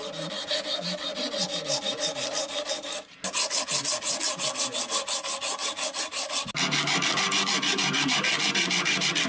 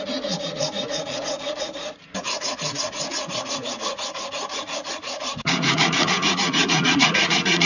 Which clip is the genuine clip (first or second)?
first